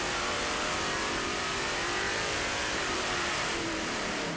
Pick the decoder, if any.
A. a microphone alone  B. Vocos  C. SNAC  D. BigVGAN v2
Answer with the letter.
D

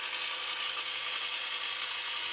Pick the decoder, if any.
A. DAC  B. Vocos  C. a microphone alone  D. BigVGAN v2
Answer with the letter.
B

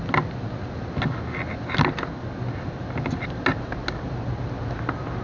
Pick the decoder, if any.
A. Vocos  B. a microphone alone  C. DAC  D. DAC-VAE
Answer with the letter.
B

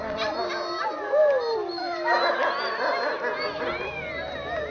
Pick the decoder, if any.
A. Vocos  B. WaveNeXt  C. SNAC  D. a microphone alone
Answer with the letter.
D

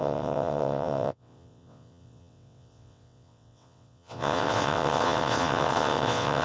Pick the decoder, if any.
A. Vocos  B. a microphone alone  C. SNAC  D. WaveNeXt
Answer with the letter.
D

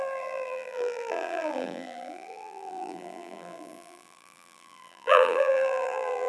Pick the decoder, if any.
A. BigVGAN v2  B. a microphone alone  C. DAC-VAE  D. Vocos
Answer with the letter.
A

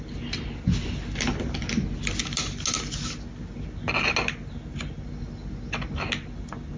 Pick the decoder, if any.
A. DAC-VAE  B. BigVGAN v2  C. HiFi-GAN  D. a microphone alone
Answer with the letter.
D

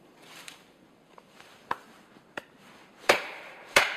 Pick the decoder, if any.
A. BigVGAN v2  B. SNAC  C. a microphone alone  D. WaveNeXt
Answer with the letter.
A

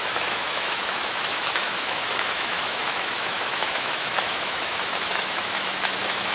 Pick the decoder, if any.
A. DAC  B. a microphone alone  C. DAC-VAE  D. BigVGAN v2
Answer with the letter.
C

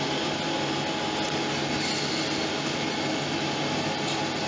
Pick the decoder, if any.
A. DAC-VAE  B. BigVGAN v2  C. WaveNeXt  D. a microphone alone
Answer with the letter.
D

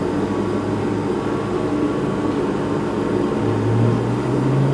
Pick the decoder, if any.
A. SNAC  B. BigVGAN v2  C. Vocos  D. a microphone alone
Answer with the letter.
D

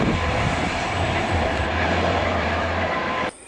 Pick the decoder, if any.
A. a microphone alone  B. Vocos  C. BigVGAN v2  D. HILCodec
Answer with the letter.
C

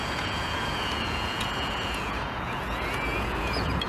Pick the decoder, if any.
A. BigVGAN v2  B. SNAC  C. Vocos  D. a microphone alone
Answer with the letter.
C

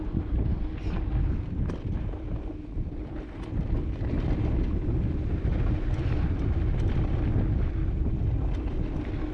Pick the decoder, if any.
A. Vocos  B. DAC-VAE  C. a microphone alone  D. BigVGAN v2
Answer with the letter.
C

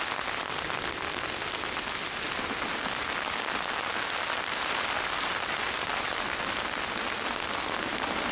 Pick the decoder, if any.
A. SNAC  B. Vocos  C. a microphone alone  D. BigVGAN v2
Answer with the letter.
C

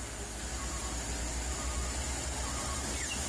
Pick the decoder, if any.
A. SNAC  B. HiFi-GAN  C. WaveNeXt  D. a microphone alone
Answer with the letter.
D